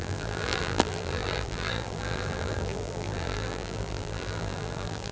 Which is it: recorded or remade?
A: remade